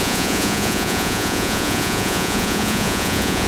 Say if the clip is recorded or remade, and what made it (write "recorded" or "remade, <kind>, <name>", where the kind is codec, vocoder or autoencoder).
remade, vocoder, Vocos